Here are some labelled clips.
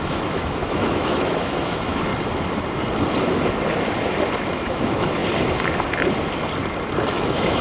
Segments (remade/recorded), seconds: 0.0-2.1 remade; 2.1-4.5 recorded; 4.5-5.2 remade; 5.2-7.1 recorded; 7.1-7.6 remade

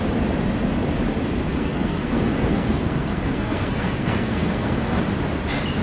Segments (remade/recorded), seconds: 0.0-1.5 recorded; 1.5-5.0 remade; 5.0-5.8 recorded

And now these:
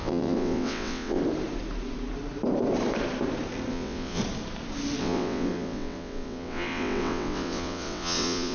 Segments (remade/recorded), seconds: 0.0-1.2 remade; 1.2-3.7 recorded; 3.7-4.2 remade; 4.2-5.0 recorded; 5.0-8.5 remade

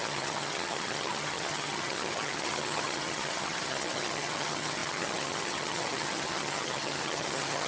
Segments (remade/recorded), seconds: 0.0-7.7 remade

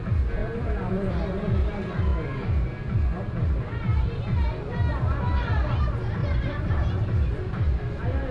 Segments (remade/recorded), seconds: 0.0-0.4 recorded; 0.4-1.3 remade; 1.3-6.2 recorded; 6.2-6.9 remade; 6.9-8.3 recorded

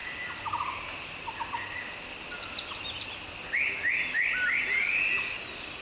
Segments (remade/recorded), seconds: 0.0-5.8 recorded

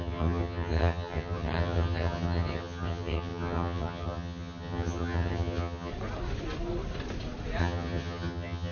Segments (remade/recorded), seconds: 0.0-5.9 remade; 5.9-7.6 recorded; 7.6-8.7 remade

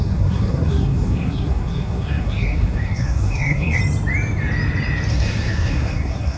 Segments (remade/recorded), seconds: 0.0-3.8 remade; 3.8-5.1 recorded; 5.1-6.4 remade